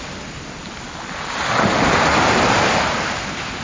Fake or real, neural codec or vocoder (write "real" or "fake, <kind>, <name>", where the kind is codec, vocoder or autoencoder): real